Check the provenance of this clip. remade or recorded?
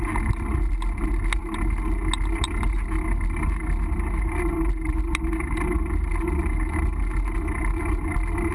recorded